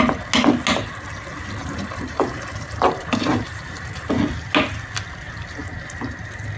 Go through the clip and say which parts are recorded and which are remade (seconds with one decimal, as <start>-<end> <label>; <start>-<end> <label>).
0.0-1.6 recorded; 1.6-4.1 remade; 4.1-6.6 recorded